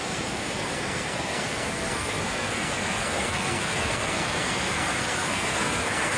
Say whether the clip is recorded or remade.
remade